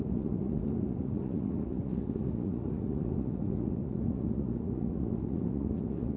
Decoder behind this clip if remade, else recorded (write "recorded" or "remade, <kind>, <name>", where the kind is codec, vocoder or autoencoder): remade, vocoder, Vocos